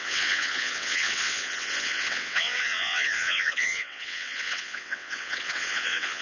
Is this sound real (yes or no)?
no